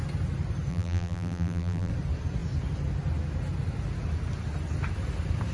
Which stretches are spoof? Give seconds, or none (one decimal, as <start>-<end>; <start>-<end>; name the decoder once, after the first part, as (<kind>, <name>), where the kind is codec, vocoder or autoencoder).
0.7-1.9 (vocoder, BigVGAN v2)